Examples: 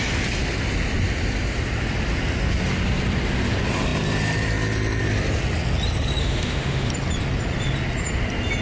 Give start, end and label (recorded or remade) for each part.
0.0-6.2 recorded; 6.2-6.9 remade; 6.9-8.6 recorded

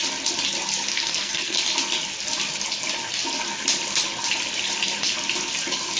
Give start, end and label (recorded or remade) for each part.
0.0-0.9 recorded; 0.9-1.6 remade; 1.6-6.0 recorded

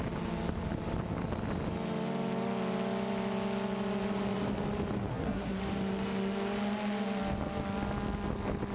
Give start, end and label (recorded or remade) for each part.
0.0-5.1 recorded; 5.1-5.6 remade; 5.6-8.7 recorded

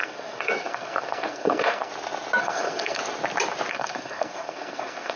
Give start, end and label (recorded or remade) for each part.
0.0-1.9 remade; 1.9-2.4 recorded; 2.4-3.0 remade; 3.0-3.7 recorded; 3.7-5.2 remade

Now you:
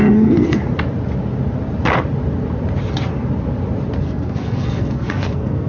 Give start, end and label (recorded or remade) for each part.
0.0-0.6 remade; 0.6-4.0 recorded; 4.0-5.7 remade

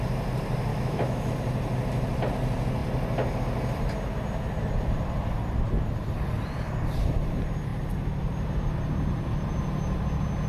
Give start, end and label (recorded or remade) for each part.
0.0-0.7 recorded; 0.7-1.3 remade; 1.3-10.5 recorded